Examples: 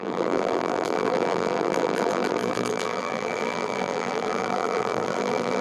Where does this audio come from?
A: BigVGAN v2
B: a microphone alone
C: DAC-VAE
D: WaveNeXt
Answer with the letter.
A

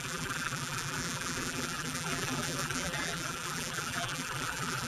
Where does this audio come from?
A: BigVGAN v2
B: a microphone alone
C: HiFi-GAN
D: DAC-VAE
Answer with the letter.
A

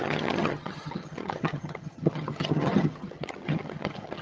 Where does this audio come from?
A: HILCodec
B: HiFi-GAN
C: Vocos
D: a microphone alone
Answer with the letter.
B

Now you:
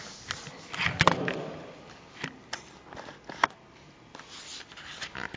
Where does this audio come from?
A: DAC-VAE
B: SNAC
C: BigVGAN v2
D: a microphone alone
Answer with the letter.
D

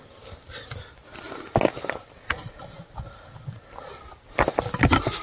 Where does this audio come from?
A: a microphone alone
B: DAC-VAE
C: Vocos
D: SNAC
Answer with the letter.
A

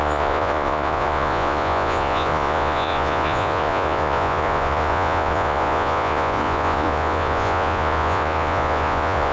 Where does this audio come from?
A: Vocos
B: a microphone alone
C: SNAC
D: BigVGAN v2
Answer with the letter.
A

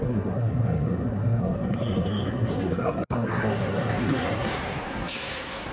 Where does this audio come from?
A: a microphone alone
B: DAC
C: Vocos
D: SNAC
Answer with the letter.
D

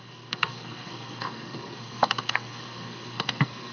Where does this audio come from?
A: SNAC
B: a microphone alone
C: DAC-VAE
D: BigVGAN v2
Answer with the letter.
A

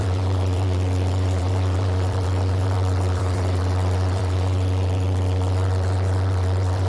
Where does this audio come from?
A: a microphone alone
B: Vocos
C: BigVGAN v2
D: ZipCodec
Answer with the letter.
C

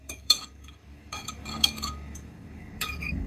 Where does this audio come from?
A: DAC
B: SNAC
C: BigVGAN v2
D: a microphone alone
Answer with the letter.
A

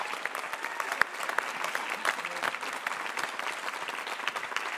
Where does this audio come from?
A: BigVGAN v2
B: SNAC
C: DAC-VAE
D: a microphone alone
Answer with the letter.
D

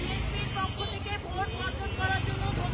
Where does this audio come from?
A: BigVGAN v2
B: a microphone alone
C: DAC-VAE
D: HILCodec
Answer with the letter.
B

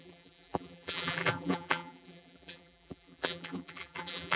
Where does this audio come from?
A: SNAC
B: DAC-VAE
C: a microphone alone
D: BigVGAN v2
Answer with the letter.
D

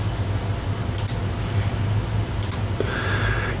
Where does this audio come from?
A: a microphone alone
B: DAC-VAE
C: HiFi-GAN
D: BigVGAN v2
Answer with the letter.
A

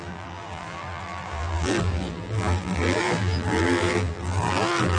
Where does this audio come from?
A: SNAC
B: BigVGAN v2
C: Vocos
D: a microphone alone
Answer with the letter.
B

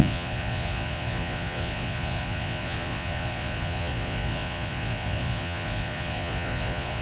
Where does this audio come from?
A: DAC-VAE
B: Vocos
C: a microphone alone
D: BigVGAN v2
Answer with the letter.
B